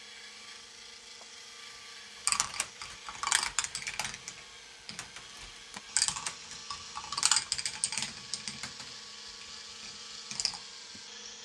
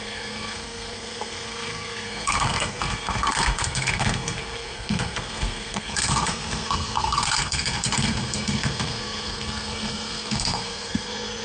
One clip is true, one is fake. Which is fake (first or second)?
second